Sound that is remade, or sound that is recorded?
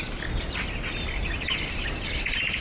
recorded